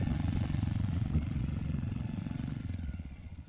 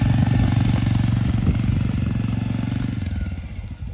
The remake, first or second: first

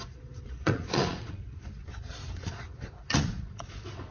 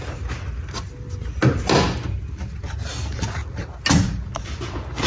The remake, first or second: first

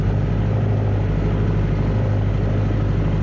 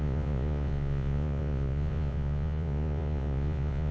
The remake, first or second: second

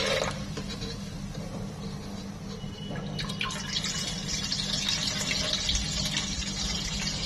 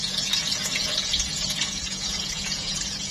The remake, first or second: second